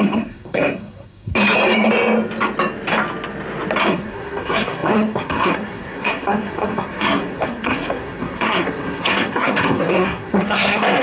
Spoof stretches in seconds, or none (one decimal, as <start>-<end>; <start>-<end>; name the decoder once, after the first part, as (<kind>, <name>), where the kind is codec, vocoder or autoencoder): 0.0-1.3 (codec, SNAC); 3.8-11.0